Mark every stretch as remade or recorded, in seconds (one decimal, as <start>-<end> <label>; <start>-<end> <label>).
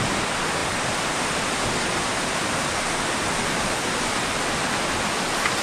0.0-5.6 recorded